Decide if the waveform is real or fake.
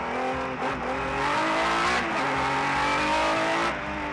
real